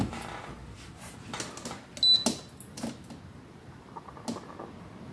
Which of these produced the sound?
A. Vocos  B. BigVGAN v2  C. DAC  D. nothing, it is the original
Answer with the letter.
D